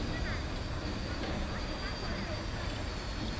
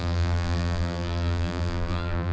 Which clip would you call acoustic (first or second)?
first